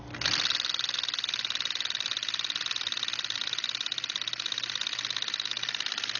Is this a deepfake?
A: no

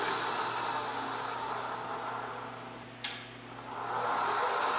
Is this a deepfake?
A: no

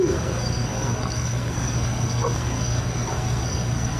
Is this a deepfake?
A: yes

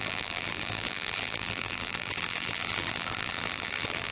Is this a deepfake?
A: yes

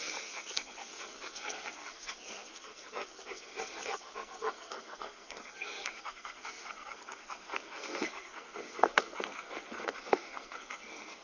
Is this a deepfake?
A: yes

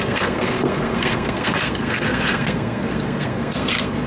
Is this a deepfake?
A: yes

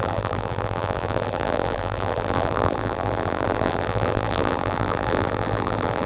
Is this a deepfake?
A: yes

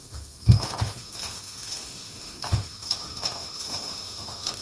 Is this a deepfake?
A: yes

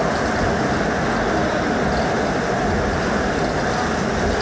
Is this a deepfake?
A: no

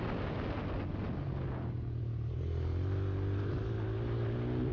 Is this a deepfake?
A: no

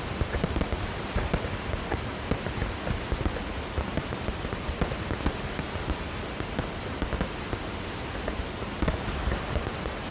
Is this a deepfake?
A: no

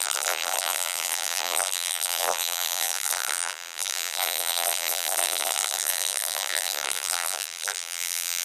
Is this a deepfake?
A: yes